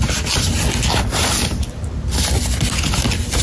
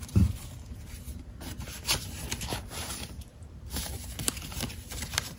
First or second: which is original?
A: first